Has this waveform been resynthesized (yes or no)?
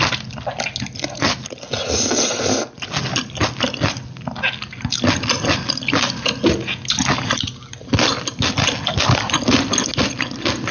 no